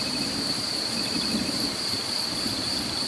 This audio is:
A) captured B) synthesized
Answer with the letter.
B